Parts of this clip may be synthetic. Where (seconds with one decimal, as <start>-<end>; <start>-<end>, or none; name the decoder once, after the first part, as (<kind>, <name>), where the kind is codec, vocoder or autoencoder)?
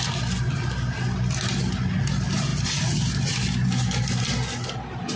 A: none